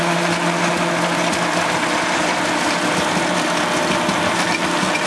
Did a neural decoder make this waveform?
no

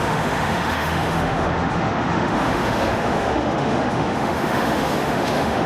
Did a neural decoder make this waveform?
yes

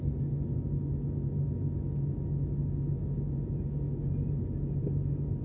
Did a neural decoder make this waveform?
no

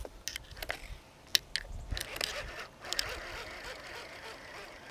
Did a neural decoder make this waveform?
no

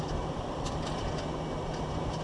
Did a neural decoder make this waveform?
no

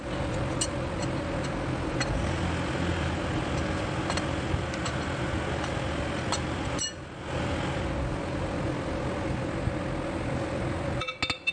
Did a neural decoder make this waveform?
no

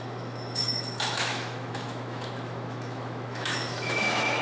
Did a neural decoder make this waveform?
yes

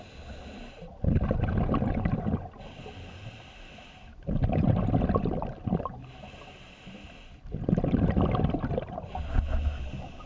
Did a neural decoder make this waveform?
no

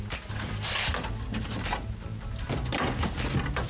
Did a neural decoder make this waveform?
no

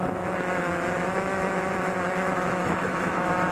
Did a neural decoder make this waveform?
yes